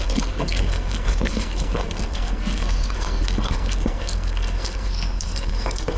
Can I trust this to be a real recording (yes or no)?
no